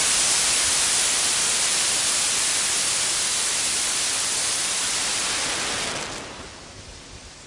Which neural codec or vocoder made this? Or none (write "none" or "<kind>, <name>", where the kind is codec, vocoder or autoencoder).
none